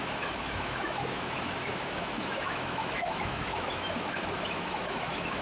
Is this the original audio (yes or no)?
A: no